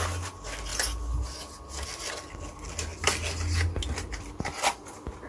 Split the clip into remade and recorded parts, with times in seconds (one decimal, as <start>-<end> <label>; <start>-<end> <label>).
0.0-5.3 recorded